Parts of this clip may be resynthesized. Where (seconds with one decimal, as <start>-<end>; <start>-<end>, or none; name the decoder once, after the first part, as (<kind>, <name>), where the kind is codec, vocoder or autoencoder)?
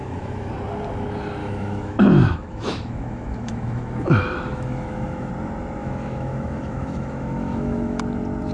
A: 0.0-0.5 (autoencoder, DAC-VAE); 1.4-5.3; 5.8-8.0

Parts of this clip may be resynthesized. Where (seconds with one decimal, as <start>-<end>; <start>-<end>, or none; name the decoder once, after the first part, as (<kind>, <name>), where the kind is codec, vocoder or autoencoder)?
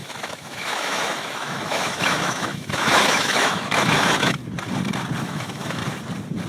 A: 0.0-4.4 (autoencoder, DAC-VAE); 5.2-5.8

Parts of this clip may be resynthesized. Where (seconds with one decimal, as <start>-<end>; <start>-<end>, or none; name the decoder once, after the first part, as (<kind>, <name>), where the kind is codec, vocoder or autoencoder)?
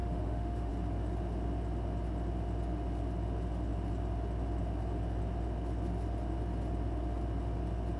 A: 0.0-0.7 (autoencoder, DAC-VAE)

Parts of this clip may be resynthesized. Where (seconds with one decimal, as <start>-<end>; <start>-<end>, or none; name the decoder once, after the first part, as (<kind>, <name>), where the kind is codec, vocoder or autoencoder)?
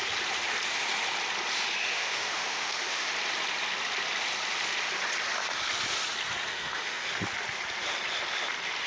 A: 1.9-3.1 (autoencoder, DAC-VAE); 6.5-7.1